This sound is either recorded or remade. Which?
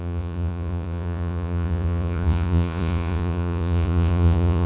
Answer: remade